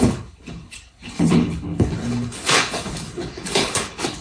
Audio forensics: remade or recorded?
remade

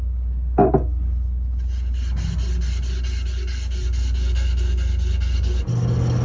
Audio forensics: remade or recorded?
recorded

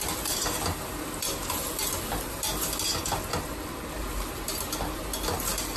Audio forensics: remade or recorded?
recorded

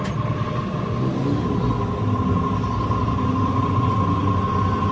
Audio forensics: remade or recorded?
recorded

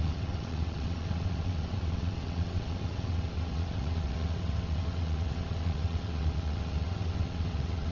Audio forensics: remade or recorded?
remade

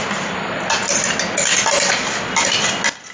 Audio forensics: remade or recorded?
recorded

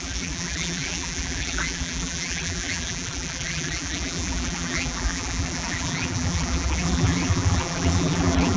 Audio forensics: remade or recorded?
remade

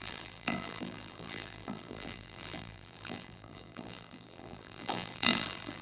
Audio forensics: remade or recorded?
remade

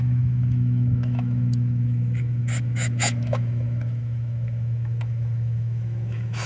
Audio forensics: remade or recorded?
remade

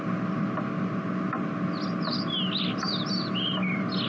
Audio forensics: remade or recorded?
recorded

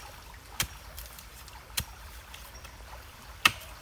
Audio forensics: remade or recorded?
remade